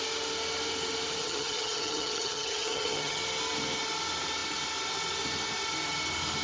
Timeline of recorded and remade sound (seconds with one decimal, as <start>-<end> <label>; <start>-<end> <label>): 0.0-1.2 recorded; 1.2-3.2 remade; 3.2-6.4 recorded